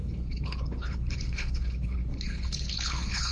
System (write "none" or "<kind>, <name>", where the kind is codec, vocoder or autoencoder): codec, HILCodec